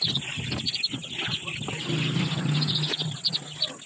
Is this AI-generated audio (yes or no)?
no